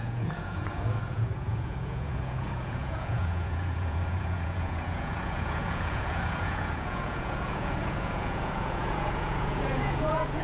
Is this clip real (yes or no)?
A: no